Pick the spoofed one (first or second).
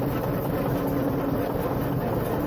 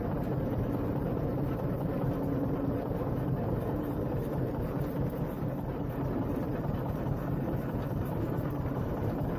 second